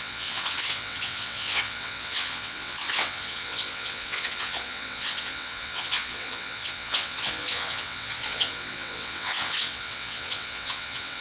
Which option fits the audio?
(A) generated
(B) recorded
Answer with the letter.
A